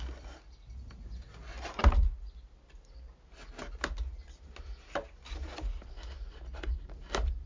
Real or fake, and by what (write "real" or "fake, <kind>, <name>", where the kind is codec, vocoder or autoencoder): real